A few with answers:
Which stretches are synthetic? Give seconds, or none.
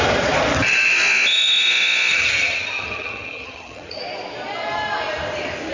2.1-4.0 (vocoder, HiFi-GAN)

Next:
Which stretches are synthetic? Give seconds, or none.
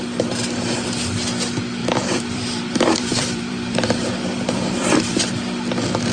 1.8-5.3 (vocoder, BigVGAN v2)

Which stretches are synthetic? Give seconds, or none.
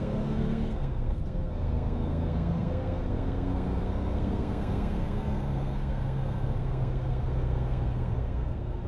0.0-8.9 (codec, SNAC)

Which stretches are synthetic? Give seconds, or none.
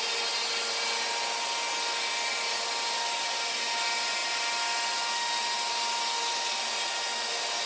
none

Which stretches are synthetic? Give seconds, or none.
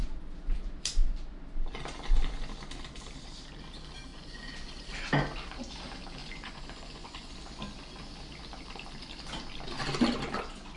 4.1-4.7 (vocoder, Vocos); 6.2-7.3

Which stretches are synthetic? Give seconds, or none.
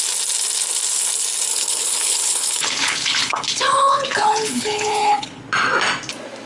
1.5-5.4 (codec, HILCodec)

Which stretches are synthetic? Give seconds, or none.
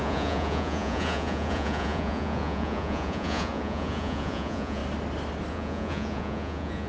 0.0-4.8 (vocoder, Vocos); 5.5-6.9